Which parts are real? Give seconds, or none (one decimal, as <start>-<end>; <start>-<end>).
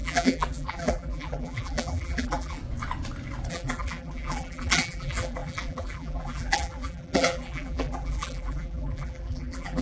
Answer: 2.6-3.5